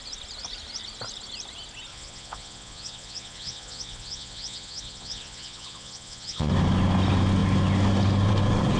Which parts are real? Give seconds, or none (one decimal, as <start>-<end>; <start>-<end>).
0.0-1.9; 6.5-8.8